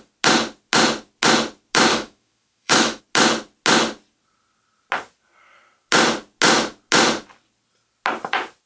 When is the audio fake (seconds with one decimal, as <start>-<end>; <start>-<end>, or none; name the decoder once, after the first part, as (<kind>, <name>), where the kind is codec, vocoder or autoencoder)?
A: 1.9-3.0 (autoencoder, DAC-VAE)